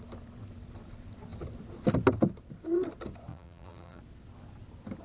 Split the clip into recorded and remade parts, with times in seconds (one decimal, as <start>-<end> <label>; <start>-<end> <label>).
0.0-3.3 recorded; 3.3-4.0 remade; 4.0-5.0 recorded